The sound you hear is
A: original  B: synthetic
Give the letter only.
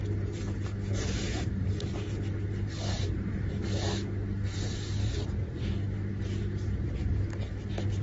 A